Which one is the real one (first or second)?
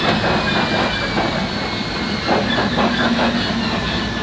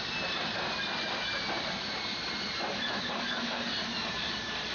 first